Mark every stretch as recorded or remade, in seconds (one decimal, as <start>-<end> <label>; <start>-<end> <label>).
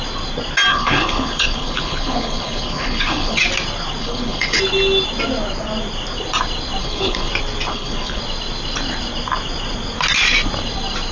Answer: 0.0-0.7 recorded; 0.7-3.4 remade; 3.4-4.0 recorded; 4.0-4.6 remade; 4.6-6.8 recorded; 6.8-7.3 remade; 7.3-7.7 recorded; 7.7-8.2 remade; 8.2-11.1 recorded